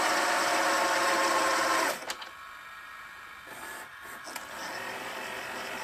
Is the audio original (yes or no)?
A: yes